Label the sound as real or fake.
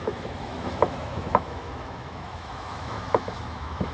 fake